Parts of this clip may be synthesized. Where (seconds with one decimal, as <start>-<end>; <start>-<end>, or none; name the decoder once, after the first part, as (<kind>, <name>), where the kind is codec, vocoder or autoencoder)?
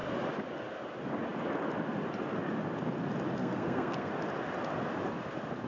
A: 3.4-4.1 (codec, SNAC)